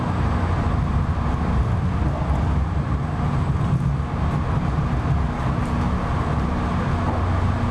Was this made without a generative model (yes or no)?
yes